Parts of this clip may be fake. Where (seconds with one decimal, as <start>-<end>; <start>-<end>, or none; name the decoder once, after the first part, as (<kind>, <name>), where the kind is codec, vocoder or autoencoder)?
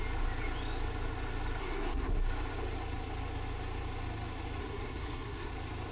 1.6-2.1 (codec, SNAC); 4.6-5.5